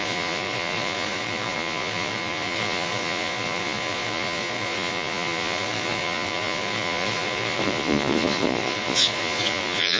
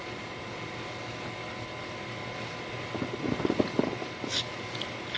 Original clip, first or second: second